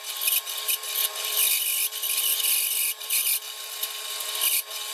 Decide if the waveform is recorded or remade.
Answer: recorded